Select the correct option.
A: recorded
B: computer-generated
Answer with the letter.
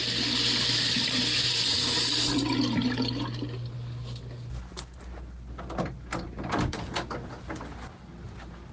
A